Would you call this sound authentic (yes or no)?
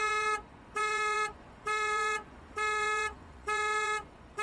no